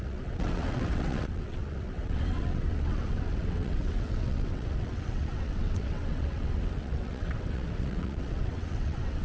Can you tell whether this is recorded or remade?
remade